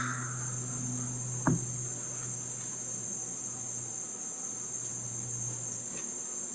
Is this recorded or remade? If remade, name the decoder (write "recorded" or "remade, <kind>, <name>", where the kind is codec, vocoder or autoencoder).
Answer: recorded